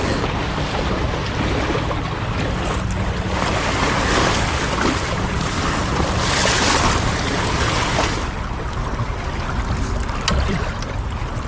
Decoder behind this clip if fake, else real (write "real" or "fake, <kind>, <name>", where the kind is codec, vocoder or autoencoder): real